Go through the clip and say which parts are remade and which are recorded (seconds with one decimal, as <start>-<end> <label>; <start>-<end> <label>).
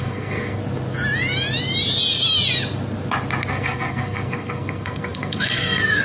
0.0-0.6 remade; 0.6-3.5 recorded; 3.5-6.0 remade